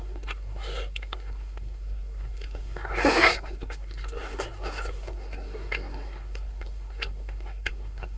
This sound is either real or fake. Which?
fake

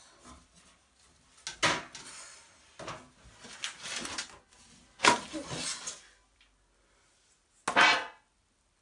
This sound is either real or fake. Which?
real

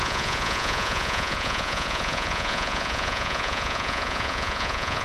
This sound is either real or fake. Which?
fake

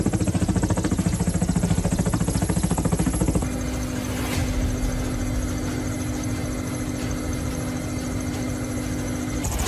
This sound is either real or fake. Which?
real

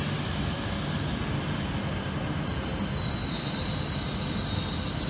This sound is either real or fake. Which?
real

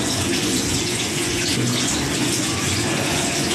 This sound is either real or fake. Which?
fake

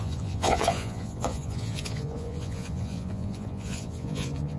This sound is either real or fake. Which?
fake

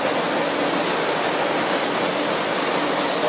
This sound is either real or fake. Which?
real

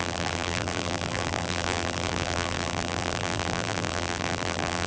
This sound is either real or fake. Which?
fake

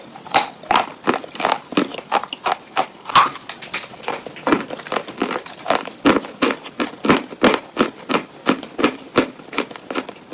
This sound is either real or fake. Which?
real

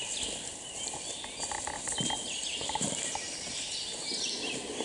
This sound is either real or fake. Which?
real